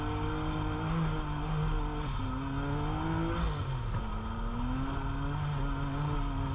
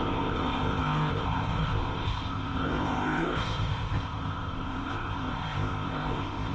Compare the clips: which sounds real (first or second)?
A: first